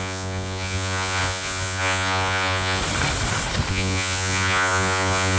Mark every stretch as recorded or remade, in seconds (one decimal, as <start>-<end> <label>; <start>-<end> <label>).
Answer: 0.0-2.8 remade; 2.8-3.7 recorded; 3.7-5.4 remade